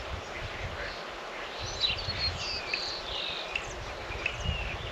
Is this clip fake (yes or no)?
no